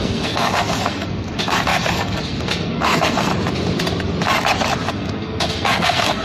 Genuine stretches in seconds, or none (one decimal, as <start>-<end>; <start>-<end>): 3.3-4.9